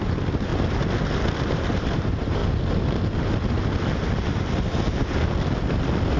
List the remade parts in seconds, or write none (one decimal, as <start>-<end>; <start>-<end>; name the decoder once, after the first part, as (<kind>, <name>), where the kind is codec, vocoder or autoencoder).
0.0-0.5 (vocoder, BigVGAN v2); 1.3-2.4